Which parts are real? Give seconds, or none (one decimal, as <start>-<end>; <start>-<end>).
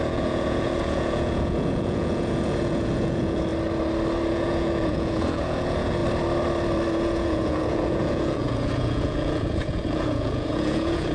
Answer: 3.5-4.3; 6.0-6.9